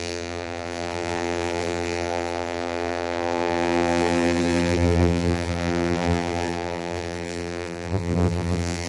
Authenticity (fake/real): fake